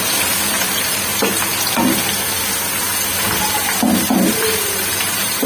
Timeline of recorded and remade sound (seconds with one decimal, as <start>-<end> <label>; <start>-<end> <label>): 0.0-1.1 remade; 1.1-4.3 recorded; 4.3-5.5 remade